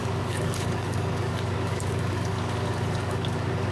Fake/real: fake